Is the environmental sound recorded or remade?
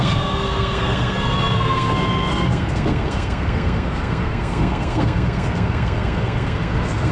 remade